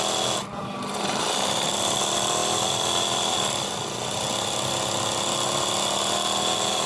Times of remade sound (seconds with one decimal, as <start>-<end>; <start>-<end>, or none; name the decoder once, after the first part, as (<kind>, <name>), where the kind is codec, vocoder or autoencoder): none